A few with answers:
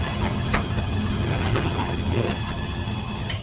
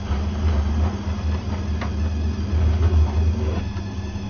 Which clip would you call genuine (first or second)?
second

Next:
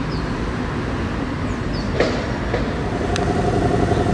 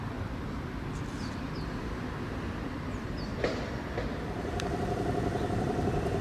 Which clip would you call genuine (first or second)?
first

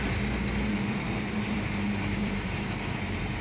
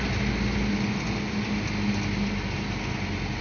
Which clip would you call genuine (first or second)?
second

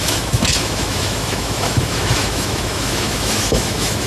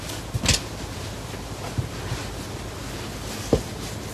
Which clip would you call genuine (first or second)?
second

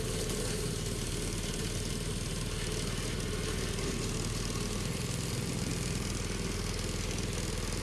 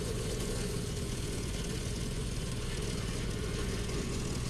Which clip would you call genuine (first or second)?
first